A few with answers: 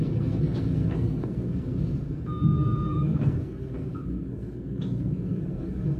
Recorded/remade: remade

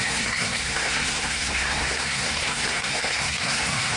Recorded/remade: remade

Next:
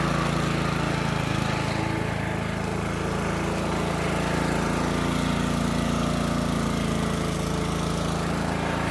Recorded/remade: recorded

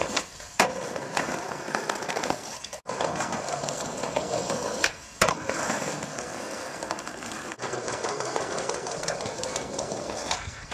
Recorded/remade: remade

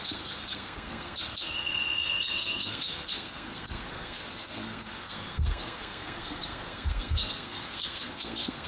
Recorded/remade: remade